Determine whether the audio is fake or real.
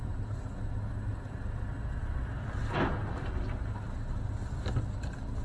real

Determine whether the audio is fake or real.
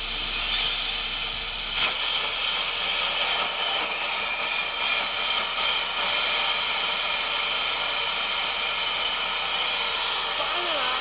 real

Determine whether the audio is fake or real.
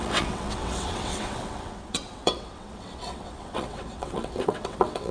fake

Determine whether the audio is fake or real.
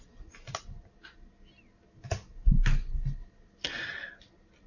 real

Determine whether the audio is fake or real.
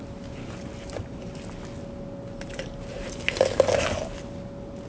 real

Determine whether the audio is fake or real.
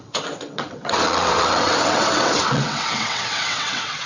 fake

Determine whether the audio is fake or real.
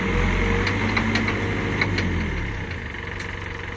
real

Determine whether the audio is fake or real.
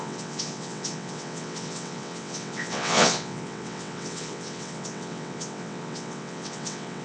fake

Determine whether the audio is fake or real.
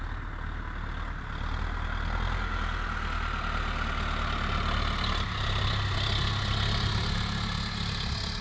real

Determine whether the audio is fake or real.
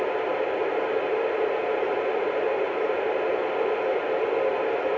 real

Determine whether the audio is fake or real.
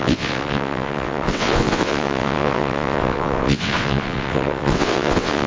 fake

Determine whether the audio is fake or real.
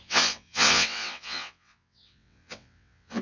fake